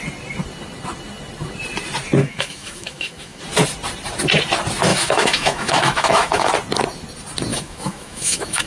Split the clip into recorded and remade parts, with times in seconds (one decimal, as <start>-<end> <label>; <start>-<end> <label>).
0.0-2.2 recorded; 2.2-3.4 remade; 3.4-4.9 recorded; 4.9-6.5 remade; 6.5-7.5 recorded; 7.5-8.7 remade

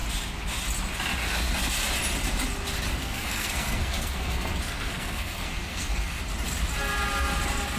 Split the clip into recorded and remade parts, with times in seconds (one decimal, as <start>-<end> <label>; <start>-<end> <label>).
0.0-3.0 recorded; 3.0-6.2 remade; 6.2-7.8 recorded